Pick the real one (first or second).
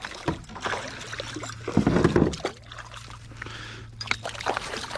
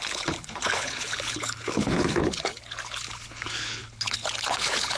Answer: first